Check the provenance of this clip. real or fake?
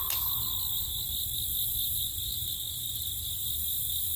real